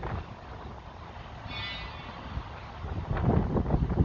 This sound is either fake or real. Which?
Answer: real